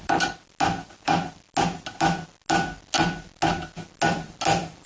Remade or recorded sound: recorded